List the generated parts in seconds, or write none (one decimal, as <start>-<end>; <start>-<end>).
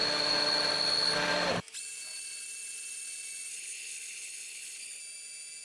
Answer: 3.5-5.0